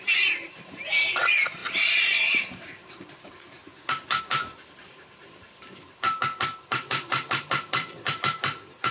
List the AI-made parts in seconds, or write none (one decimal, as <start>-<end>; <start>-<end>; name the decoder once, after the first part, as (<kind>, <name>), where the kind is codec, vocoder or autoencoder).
0.0-1.6 (vocoder, BigVGAN v2); 2.3-3.6; 4.2-8.9